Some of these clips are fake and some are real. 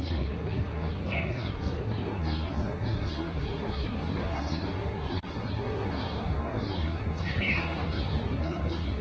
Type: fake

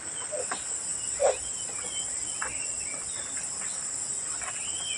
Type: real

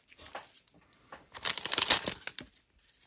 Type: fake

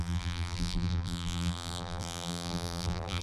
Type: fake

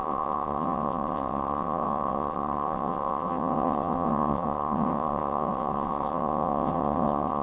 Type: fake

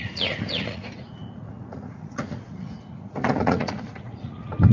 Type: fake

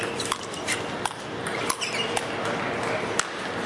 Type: real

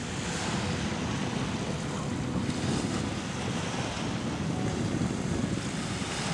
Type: real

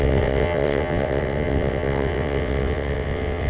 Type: fake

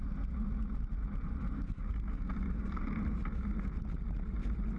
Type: real